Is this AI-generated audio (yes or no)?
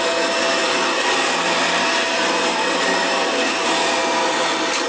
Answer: no